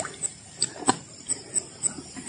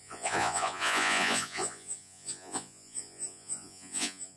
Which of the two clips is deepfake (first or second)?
second